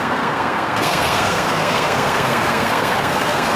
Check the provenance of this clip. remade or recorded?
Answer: remade